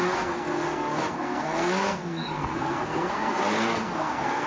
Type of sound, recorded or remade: remade